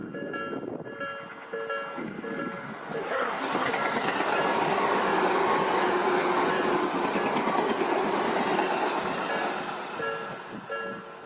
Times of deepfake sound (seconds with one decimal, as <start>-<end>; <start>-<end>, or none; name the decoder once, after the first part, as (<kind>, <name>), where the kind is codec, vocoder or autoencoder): 3.0-3.7 (codec, SNAC)